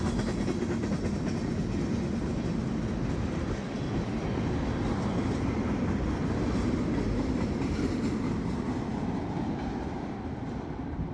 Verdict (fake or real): real